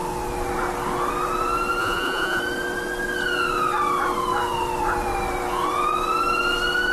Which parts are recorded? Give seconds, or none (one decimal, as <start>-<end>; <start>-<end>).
0.0-1.8; 2.4-6.9

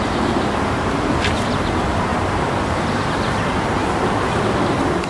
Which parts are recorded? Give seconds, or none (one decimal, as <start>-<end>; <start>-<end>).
0.0-2.1

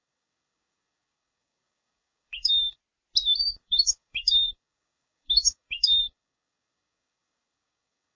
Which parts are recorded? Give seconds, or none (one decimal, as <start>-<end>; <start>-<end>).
2.8-3.5

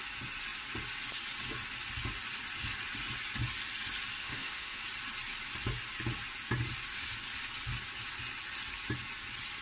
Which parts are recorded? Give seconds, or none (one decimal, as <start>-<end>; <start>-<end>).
0.0-4.2; 4.8-9.6

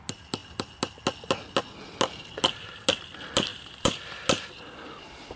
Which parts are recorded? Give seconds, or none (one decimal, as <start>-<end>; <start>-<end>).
0.0-3.5; 4.0-5.4